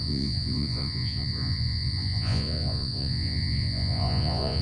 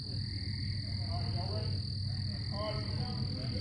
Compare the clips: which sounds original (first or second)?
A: second